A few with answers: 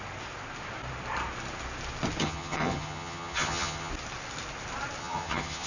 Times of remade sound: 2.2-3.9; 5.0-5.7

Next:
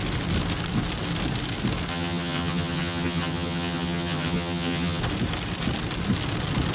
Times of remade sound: 1.9-5.0

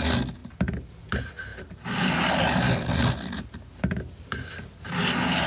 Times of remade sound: none